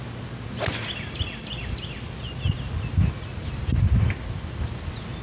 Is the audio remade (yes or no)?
no